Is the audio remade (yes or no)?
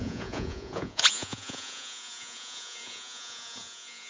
yes